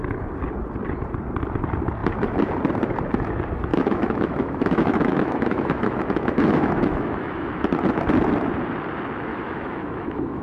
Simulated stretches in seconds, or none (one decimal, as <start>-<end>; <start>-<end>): 3.7-7.5; 9.3-10.4